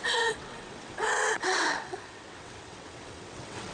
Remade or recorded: remade